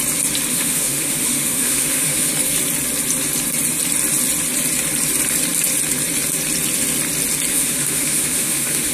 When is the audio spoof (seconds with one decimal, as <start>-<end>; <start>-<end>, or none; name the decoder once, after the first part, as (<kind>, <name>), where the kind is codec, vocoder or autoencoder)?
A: 0.5-2.3 (autoencoder, DAC-VAE); 7.5-8.9